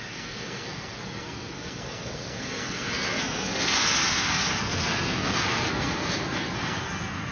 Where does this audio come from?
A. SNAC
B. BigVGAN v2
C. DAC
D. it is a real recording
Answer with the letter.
A